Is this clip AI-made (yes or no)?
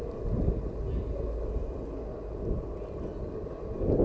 no